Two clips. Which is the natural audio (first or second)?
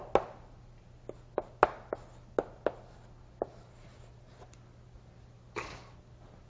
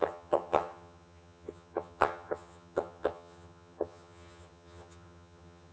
first